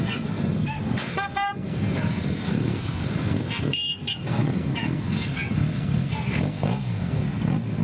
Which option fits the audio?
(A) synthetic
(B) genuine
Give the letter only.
A